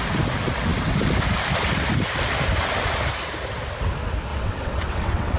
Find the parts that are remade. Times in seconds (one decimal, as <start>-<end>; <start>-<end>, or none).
4.3-5.4